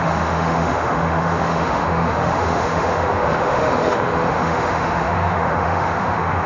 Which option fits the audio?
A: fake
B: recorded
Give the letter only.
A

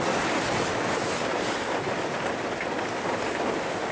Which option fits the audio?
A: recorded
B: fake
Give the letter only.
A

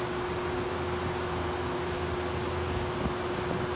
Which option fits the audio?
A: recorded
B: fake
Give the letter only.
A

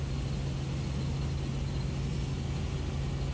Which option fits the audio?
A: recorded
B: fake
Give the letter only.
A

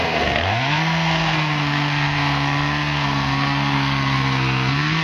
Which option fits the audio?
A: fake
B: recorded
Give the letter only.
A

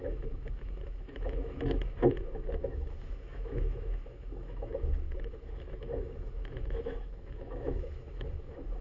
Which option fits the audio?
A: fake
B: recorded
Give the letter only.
A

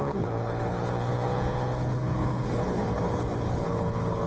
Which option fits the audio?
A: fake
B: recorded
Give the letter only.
A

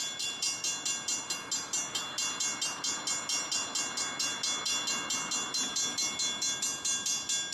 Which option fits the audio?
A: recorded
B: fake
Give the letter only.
A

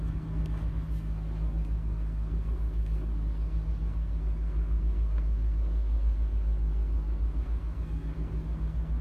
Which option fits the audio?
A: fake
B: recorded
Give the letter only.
A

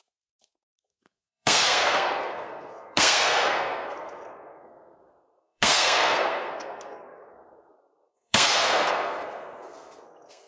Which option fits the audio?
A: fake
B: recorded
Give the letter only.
A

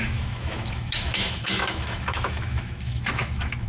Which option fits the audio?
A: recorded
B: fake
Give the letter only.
B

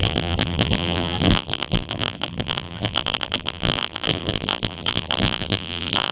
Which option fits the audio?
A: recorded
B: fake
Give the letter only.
B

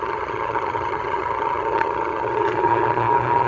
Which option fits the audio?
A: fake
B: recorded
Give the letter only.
A